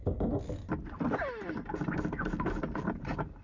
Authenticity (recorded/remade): recorded